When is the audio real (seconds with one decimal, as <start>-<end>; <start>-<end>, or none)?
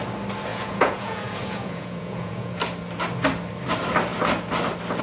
0.0-0.5; 2.6-5.0